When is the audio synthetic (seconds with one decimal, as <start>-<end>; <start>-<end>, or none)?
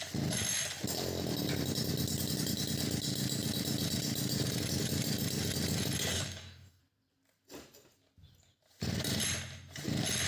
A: 6.1-6.8